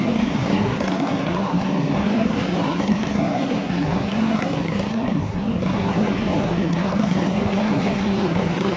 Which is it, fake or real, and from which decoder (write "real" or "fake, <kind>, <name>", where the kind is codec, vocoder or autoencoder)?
fake, codec, SNAC